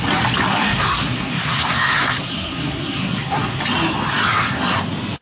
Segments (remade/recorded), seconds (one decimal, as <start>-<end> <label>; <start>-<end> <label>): 0.0-0.5 recorded; 0.5-3.6 remade; 3.6-4.1 recorded; 4.1-4.8 remade; 4.8-5.2 recorded